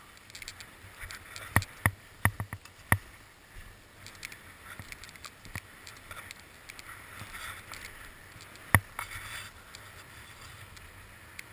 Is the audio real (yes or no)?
yes